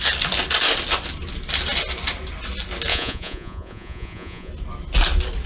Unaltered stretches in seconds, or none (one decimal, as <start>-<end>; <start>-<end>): 0.0-2.9; 4.5-5.5